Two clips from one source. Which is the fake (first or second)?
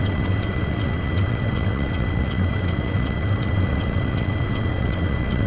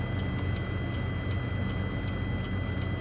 first